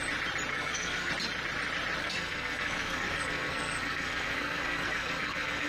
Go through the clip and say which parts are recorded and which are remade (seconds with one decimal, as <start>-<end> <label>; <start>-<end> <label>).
0.0-0.5 recorded; 0.5-1.1 remade; 1.1-2.0 recorded; 2.0-5.7 remade